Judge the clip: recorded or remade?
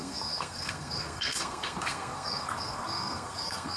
remade